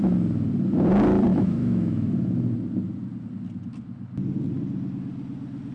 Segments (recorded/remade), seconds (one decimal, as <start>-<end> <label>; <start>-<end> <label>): 0.0-1.3 recorded; 1.3-2.1 remade; 2.1-5.7 recorded